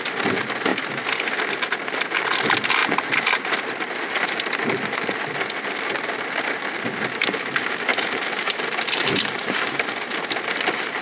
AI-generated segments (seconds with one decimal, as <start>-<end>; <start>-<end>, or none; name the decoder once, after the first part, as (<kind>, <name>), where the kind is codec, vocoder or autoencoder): 2.8-3.5 (vocoder, BigVGAN v2); 7.9-9.6